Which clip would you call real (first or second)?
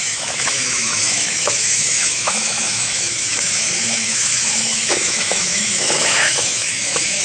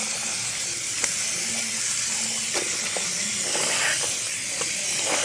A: second